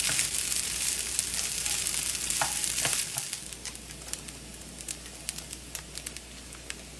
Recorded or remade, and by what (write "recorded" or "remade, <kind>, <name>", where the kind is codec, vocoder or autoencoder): recorded